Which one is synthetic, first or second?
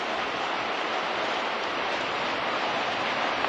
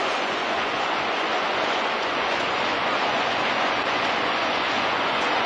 second